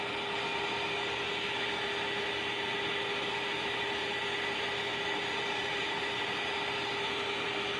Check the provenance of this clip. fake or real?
real